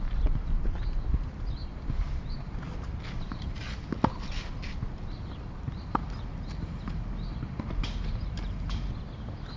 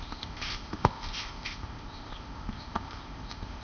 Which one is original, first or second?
first